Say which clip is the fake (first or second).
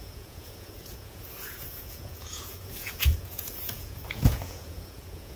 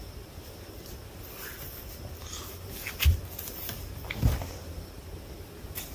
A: first